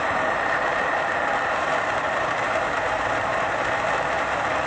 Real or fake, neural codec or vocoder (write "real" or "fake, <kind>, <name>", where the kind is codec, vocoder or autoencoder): fake, vocoder, BigVGAN v2